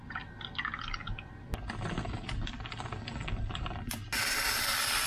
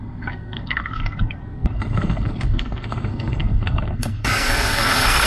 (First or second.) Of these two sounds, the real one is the first